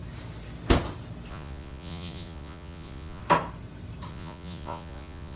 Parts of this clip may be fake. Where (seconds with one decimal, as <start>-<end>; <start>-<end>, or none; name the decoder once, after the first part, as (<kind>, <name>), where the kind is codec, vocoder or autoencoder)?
1.3-3.2 (vocoder, Vocos); 4.1-5.4